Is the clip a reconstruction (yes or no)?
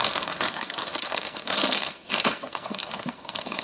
yes